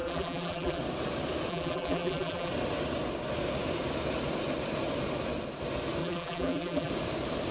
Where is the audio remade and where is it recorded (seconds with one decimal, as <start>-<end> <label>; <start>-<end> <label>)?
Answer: 0.0-0.8 remade; 0.8-1.5 recorded; 1.5-2.5 remade; 2.5-6.0 recorded; 6.0-6.9 remade; 6.9-7.5 recorded